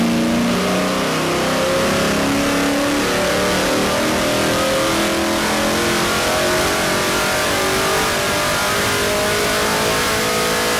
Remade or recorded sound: recorded